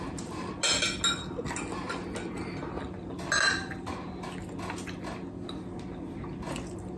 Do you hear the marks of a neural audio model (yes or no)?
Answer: no